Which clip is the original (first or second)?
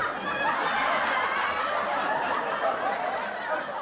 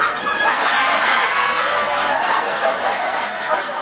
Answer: first